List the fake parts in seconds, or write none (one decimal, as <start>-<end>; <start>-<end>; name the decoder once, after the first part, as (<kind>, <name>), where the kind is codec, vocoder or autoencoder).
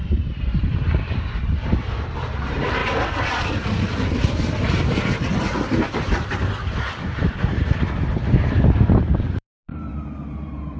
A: 0.0-2.8 (vocoder, BigVGAN v2); 4.6-10.8